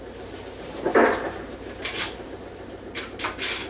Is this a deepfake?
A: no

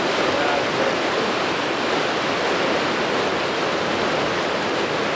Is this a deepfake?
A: no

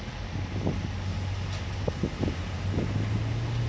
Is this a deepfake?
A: no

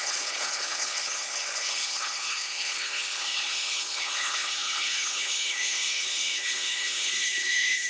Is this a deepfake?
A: yes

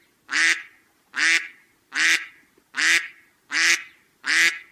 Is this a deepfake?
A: no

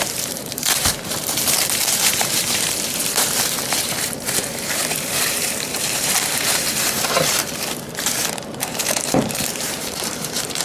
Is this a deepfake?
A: yes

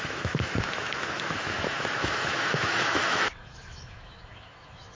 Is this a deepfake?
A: yes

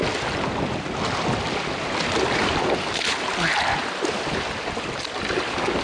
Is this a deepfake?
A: no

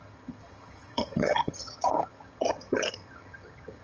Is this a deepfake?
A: yes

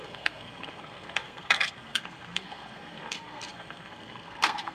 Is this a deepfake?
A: yes